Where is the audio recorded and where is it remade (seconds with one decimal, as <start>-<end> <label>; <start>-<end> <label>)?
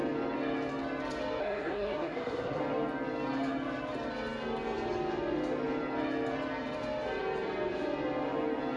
0.0-1.4 recorded; 1.4-2.6 remade; 2.6-8.8 recorded